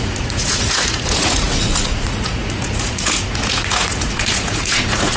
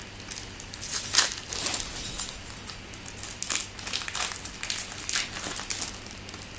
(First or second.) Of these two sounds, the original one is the second